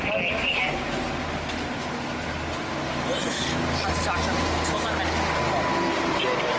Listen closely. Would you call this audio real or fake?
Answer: real